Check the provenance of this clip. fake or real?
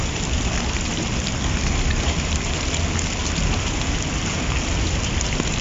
real